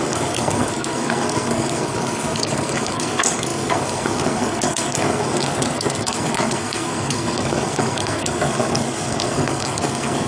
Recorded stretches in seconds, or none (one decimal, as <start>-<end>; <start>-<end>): none